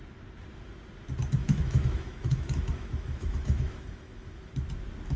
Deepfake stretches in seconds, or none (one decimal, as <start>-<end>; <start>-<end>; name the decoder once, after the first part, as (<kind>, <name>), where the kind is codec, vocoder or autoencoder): 1.4-4.5 (autoencoder, DAC-VAE)